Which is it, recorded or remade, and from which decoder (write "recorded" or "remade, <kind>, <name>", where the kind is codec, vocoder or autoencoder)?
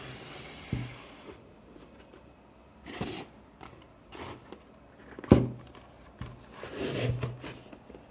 recorded